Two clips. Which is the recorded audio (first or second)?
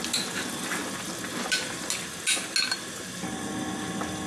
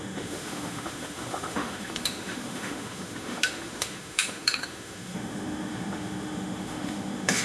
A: first